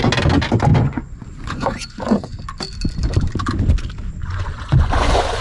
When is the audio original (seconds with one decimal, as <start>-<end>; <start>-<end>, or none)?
0.0-0.7; 2.4-4.2